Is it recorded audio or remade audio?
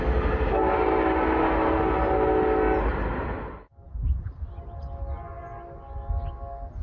recorded